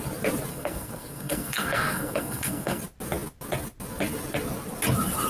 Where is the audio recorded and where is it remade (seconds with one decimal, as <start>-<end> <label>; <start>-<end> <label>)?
0.0-0.5 recorded; 0.5-2.8 remade; 2.8-5.3 recorded